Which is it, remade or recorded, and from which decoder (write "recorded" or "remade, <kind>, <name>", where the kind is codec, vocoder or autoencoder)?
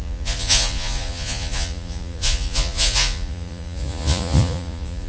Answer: remade, vocoder, Vocos